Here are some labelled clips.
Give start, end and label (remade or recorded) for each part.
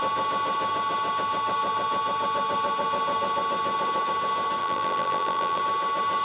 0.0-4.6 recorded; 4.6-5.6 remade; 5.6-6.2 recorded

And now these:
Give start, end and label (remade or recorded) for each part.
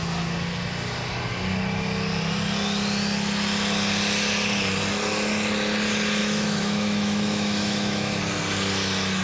0.0-6.2 recorded; 6.2-8.2 remade; 8.2-9.2 recorded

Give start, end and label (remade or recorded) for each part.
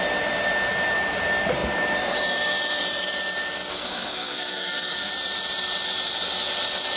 0.0-3.7 recorded; 3.7-5.1 remade; 5.1-7.0 recorded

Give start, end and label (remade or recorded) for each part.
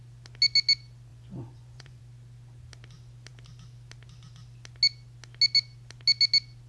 0.0-1.1 recorded; 1.1-2.0 remade; 2.0-6.7 recorded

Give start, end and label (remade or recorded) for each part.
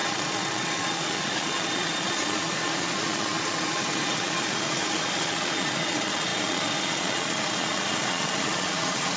0.0-9.2 remade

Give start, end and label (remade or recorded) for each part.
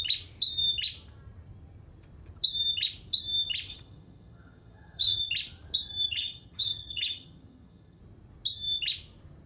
0.0-3.7 recorded; 3.7-5.2 remade; 5.2-6.1 recorded; 6.1-8.0 remade; 8.0-9.5 recorded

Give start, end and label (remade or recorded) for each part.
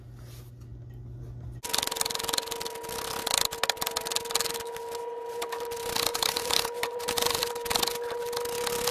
0.0-6.1 recorded; 6.1-7.5 remade; 7.5-8.9 recorded